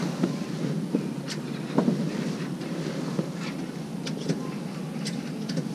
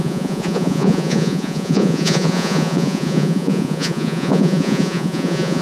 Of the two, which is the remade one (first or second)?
second